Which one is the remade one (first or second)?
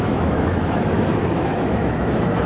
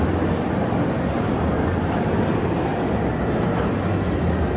first